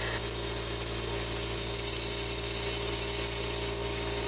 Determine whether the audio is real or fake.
real